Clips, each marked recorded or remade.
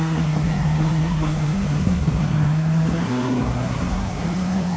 remade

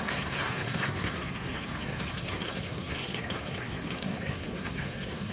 remade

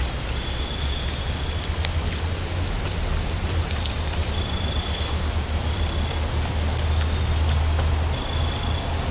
recorded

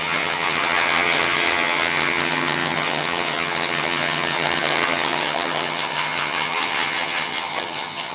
remade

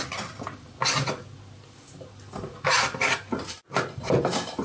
recorded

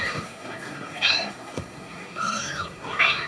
remade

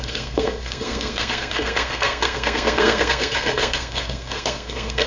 remade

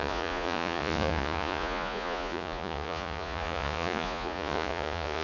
remade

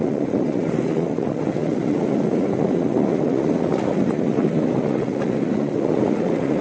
remade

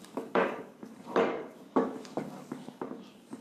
remade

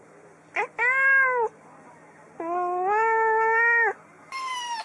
recorded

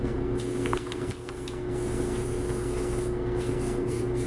remade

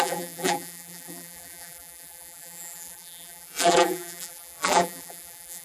remade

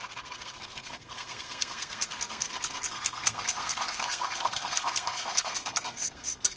remade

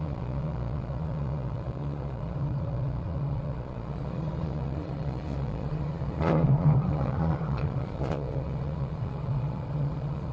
remade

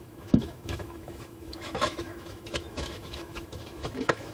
remade